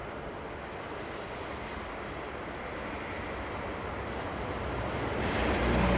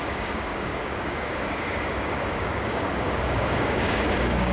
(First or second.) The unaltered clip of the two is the first